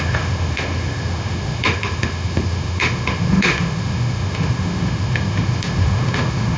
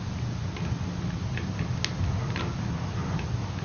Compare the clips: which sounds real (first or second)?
second